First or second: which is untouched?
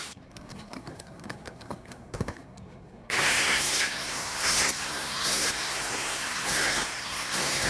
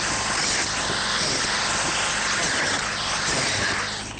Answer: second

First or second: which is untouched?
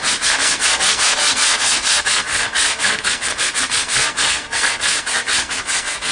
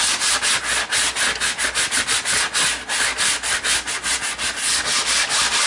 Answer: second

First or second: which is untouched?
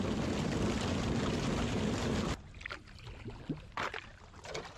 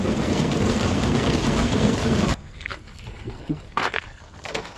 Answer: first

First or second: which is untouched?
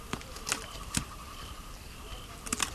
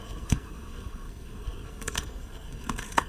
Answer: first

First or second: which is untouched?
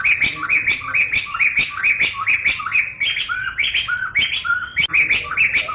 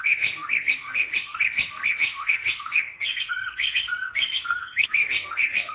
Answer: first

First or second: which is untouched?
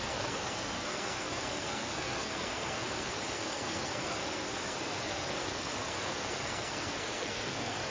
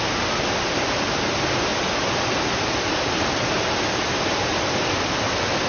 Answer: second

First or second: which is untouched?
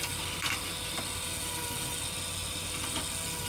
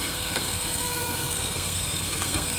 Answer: first